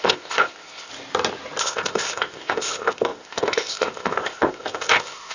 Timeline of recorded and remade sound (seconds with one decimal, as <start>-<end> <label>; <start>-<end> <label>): 0.0-0.9 remade; 0.9-1.6 recorded; 1.6-5.3 remade

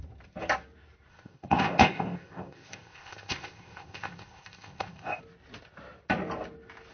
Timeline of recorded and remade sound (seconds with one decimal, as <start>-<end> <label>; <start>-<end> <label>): 0.0-1.1 recorded; 1.1-5.2 remade; 5.2-6.9 recorded